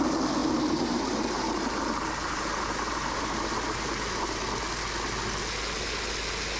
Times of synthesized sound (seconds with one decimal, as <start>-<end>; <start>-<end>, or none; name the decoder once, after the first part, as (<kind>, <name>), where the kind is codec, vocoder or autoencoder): 0.4-4.4 (vocoder, BigVGAN v2)